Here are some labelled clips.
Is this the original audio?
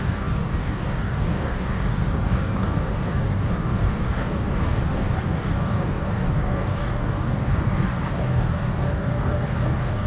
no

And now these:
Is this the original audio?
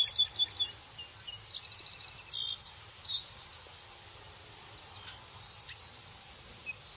yes